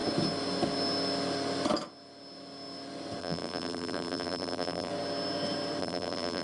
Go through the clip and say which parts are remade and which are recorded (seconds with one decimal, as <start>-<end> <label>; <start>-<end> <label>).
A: 0.0-3.2 recorded; 3.2-4.9 remade; 4.9-5.8 recorded; 5.8-6.4 remade